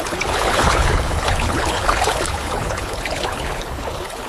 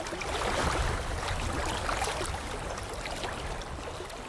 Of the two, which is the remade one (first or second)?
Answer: first